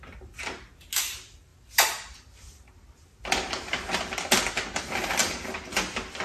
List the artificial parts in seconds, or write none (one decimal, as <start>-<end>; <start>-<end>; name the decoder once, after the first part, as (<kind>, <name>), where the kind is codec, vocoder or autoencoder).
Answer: 1.5-4.0 (vocoder, BigVGAN v2); 5.2-5.8